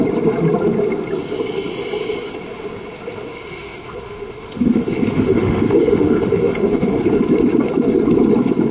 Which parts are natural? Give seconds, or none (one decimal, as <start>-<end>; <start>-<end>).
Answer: 0.0-3.3; 7.0-8.7